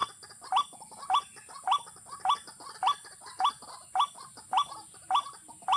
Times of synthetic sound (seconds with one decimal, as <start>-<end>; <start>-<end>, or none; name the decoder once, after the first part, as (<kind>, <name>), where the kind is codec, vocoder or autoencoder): none